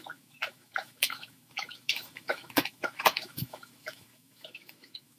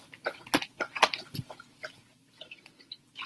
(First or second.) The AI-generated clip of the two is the first